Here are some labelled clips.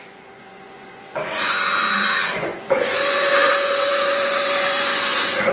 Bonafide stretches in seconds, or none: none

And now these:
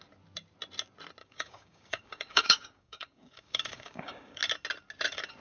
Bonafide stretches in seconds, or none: 0.0-1.2; 4.4-5.4

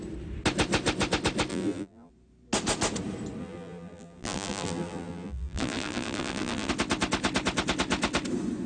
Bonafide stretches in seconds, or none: 0.0-1.5; 2.1-3.4; 6.7-8.7